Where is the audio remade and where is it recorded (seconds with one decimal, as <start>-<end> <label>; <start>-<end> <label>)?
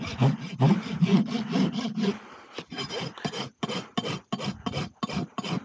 0.0-5.6 recorded